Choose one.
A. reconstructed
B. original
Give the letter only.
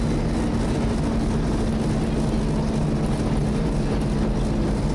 B